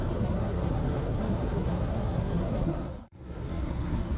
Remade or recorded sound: remade